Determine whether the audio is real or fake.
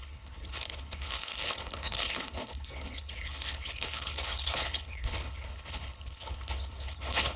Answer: fake